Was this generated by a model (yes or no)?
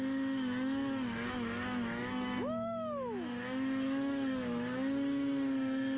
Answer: yes